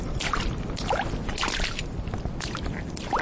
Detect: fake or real real